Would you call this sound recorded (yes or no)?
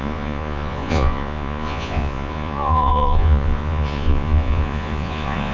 no